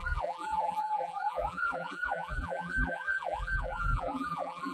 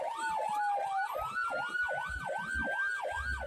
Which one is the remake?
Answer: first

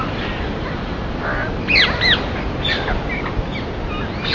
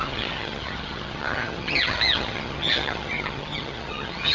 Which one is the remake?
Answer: second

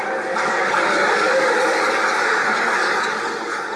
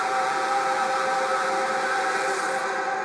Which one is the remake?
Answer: first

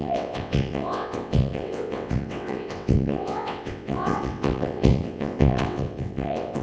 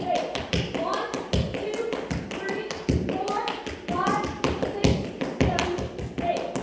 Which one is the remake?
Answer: first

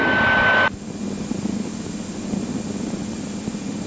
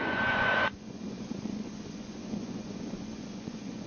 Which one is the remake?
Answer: second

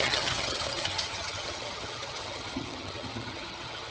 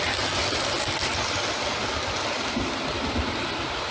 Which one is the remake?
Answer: first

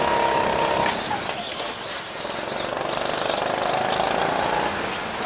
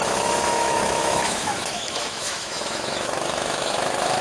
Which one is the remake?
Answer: second